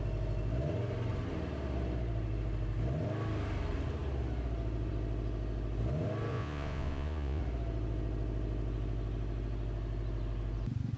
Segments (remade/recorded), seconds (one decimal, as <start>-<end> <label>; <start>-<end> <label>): 0.0-6.3 recorded; 6.3-7.4 remade; 7.4-11.0 recorded